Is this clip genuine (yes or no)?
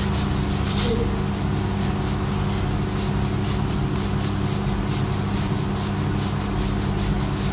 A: yes